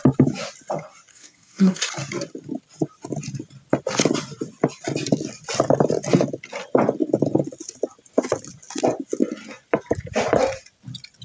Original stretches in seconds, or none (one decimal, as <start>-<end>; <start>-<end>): 0.0-1.1; 1.9-11.2